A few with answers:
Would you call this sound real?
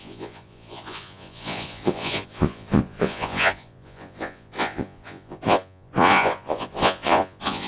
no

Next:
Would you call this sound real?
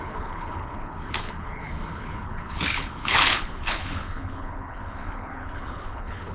no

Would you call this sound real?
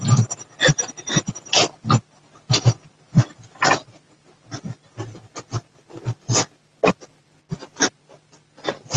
yes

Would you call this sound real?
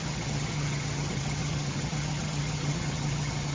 no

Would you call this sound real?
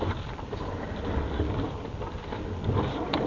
yes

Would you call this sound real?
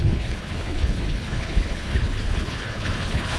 no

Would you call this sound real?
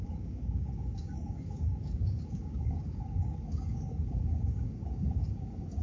no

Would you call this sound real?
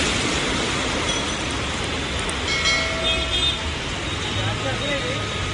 yes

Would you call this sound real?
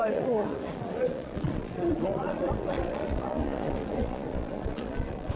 no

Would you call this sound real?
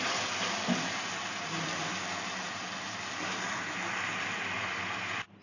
yes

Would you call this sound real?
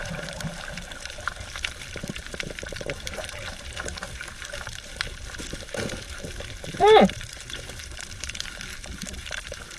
no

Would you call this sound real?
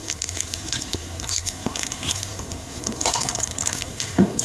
no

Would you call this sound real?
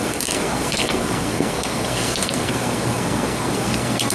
no